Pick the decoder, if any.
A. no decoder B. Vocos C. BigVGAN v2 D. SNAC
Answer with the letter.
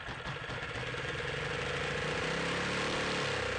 A